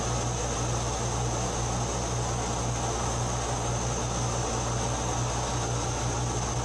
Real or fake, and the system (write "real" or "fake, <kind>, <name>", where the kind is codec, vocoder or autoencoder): real